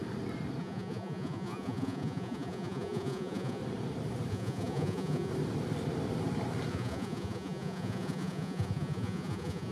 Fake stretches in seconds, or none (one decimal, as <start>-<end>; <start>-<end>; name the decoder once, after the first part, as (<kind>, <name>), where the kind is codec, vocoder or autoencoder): 0.6-3.6 (vocoder, Vocos); 4.3-5.3; 6.7-9.7